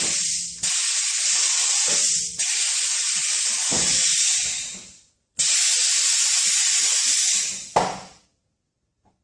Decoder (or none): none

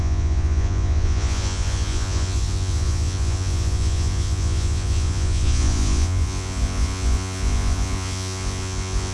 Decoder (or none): vocoder, Vocos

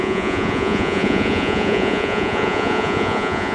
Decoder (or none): vocoder, Vocos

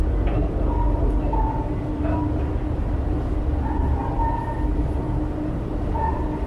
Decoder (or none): none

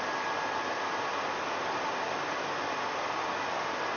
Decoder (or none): none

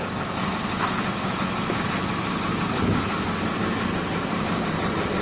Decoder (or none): none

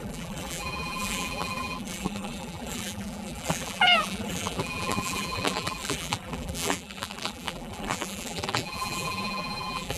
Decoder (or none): vocoder, BigVGAN v2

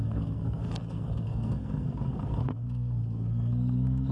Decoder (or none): codec, SNAC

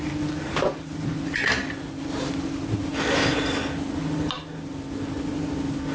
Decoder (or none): none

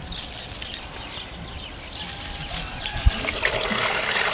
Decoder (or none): none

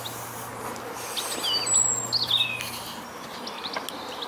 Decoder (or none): none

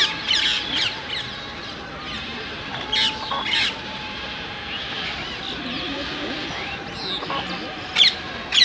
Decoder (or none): none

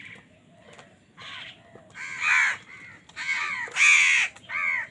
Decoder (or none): none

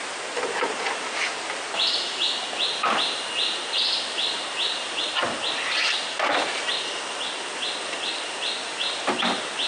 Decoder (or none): none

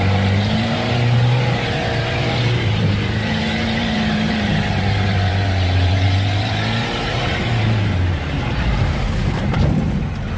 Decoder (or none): vocoder, BigVGAN v2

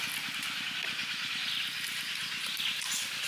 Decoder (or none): none